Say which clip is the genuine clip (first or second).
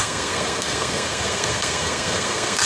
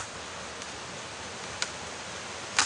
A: second